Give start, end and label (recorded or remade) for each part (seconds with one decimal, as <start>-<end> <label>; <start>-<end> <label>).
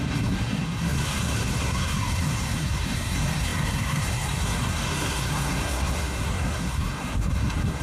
0.0-7.8 remade